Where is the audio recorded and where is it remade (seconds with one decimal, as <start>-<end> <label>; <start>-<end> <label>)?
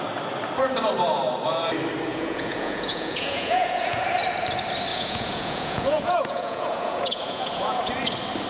0.0-2.1 recorded; 2.1-4.0 remade; 4.0-4.9 recorded; 4.9-7.9 remade; 7.9-8.5 recorded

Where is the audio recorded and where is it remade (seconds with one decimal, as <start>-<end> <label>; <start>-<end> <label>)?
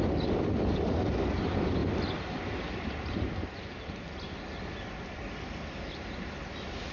0.0-6.9 recorded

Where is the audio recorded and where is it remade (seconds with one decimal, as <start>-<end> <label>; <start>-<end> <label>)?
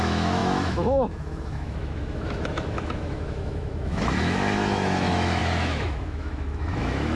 0.0-7.2 remade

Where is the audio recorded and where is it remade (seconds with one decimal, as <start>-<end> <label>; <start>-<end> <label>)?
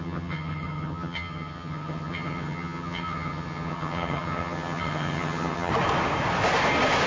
0.0-5.7 remade; 5.7-7.1 recorded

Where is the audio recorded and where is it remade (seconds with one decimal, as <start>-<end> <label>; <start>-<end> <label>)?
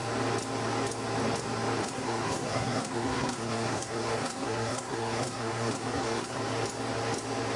0.0-1.8 recorded; 1.8-6.4 remade; 6.4-7.6 recorded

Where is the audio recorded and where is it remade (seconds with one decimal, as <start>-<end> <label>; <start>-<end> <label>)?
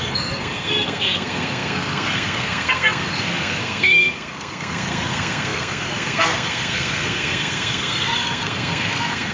0.0-9.3 remade